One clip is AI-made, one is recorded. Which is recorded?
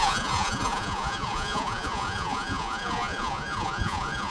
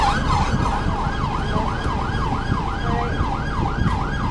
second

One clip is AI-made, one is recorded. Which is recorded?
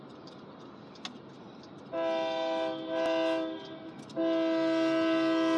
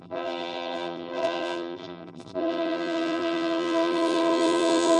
first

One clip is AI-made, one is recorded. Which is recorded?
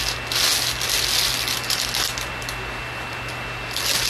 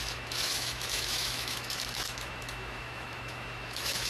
first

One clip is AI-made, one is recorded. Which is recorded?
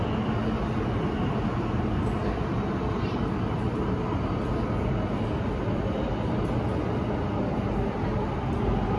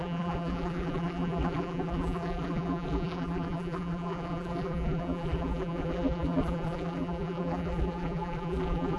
first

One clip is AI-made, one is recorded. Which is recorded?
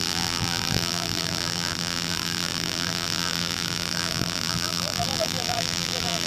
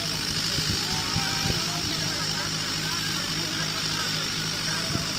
second